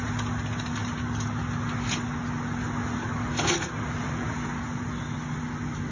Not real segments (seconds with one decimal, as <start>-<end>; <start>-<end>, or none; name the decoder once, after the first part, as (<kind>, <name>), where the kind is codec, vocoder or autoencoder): none